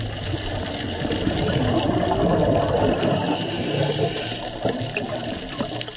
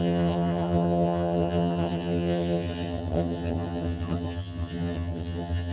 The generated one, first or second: second